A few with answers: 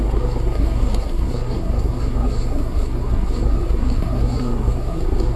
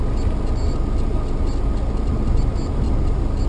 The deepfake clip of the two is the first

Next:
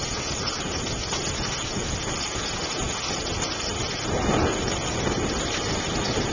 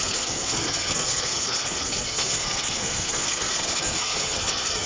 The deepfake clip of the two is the second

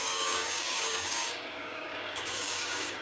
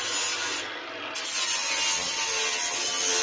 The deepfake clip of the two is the first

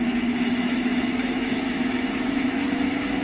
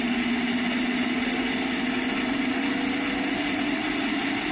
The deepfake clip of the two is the first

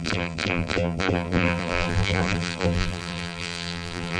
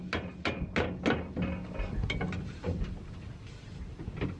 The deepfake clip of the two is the first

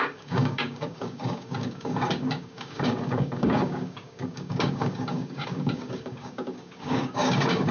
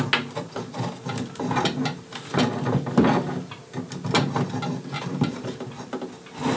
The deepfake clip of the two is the first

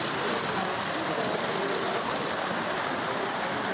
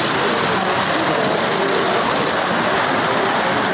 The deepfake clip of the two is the first